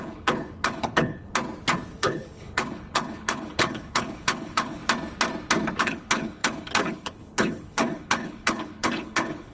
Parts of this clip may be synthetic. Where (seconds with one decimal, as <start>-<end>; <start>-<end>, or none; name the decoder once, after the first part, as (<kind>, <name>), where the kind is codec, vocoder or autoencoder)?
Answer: 0.0-1.3 (codec, HILCodec); 2.0-4.8; 5.8-9.5